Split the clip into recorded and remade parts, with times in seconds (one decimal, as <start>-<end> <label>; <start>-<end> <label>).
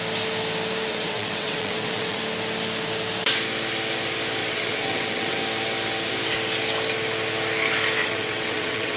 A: 0.0-0.9 recorded; 0.9-2.2 remade; 2.2-4.4 recorded; 4.4-5.4 remade; 5.4-8.0 recorded; 8.0-9.0 remade